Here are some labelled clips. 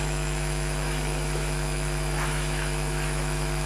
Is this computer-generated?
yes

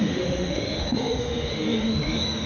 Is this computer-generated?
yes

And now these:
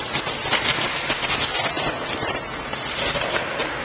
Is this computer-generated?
no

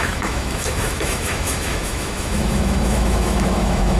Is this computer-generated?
yes